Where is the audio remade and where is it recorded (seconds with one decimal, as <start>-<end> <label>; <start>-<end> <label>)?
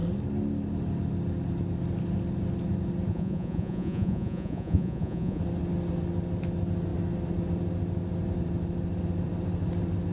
0.0-3.1 recorded; 3.1-5.4 remade; 5.4-10.1 recorded